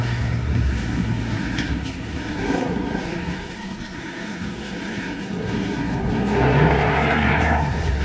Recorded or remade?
remade